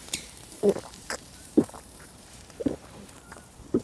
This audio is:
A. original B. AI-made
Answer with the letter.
B